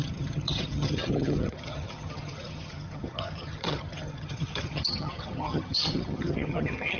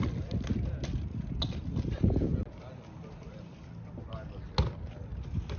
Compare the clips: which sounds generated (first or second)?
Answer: first